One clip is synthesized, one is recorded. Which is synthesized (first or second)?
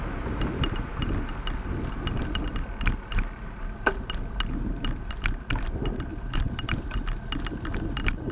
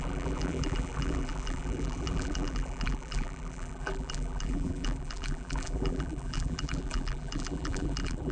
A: second